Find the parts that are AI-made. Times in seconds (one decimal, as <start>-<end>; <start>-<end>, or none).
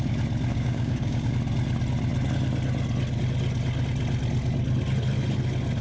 0.5-1.3